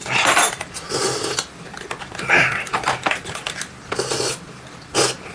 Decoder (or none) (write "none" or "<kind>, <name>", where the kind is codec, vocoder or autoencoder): none